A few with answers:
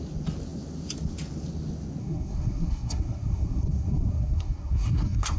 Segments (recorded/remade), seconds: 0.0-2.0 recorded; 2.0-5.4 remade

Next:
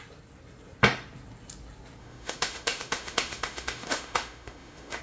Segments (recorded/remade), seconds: 0.0-2.0 recorded; 2.0-5.0 remade

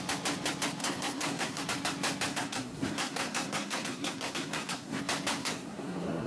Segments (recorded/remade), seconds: 0.0-0.8 recorded; 0.8-1.6 remade; 1.6-2.3 recorded; 2.3-5.0 remade; 5.0-5.4 recorded; 5.4-6.3 remade

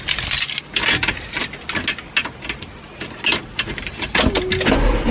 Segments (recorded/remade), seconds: 0.0-5.1 recorded

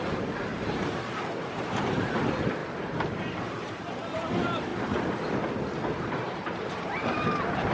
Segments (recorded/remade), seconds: 0.0-4.7 remade; 4.7-6.1 recorded; 6.1-7.7 remade

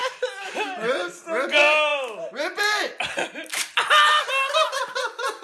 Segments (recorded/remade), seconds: 0.0-5.4 recorded

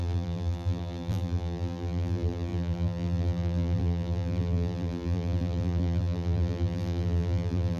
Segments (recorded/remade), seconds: 0.0-7.8 remade